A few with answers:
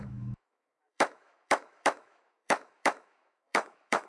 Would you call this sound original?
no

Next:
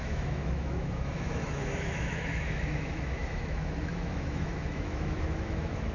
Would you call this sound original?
no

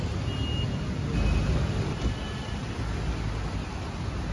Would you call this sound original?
yes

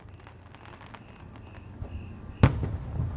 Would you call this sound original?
yes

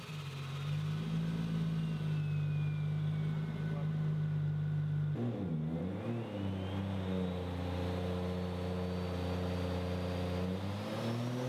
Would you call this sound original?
yes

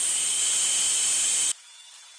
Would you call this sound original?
yes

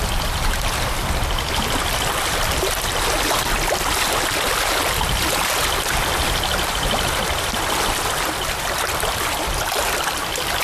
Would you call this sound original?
yes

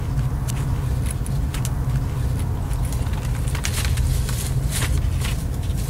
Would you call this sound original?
yes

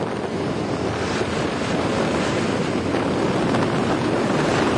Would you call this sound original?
yes